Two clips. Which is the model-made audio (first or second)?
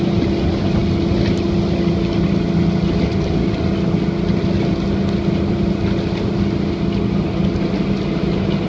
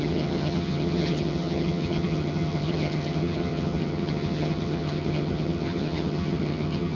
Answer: second